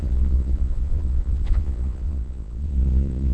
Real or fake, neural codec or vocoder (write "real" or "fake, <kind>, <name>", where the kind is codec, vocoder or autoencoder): fake, vocoder, Vocos